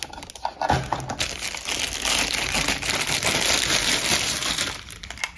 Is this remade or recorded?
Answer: recorded